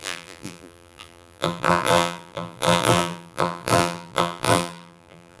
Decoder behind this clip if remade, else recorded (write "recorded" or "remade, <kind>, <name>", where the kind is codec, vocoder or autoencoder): remade, vocoder, BigVGAN v2